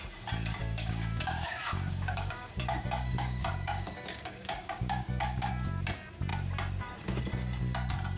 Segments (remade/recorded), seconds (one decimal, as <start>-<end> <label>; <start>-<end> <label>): 0.0-0.6 recorded; 0.6-5.5 remade; 5.5-8.2 recorded